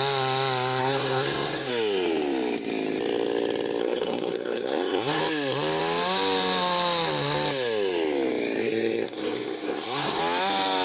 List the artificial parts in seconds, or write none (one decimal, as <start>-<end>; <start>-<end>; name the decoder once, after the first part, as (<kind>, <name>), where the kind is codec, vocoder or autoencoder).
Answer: 0.8-1.7 (codec, SNAC); 3.8-5.2; 8.6-10.2